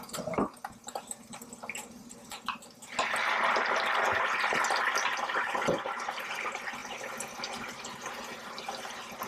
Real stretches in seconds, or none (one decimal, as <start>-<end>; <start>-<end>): 0.0-9.3